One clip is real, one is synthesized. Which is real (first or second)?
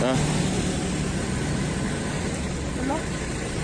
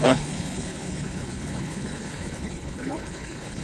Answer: first